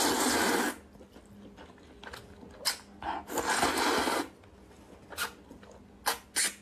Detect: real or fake real